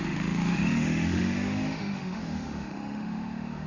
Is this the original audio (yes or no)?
no